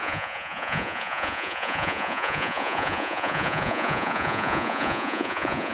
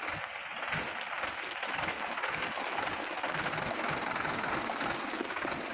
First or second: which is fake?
first